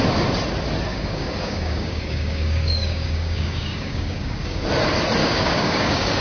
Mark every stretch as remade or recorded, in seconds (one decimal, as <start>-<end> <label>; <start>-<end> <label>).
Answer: 0.0-0.9 recorded; 0.9-4.6 remade; 4.6-5.2 recorded; 5.2-6.2 remade